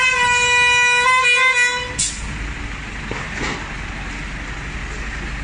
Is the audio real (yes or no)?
yes